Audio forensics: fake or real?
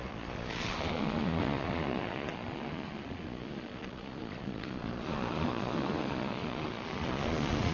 fake